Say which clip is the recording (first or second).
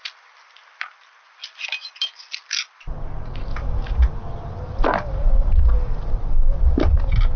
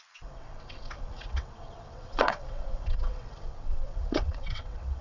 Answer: first